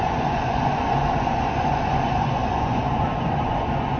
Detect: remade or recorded remade